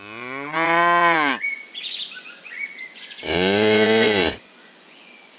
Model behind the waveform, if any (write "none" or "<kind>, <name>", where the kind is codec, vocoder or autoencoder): vocoder, Vocos